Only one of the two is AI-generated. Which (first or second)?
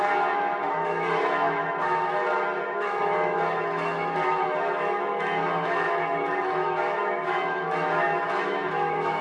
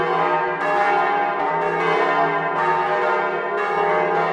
first